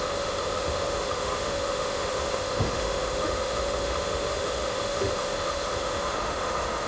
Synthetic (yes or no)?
yes